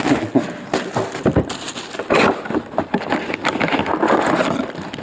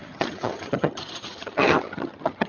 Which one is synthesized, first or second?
second